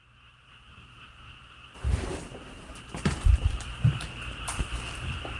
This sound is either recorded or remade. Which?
remade